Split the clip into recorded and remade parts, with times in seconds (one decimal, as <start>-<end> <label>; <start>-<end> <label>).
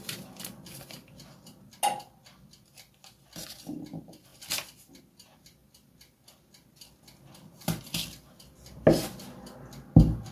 0.0-10.3 recorded